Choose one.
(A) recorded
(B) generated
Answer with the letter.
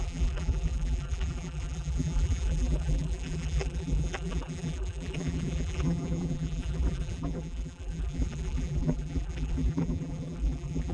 B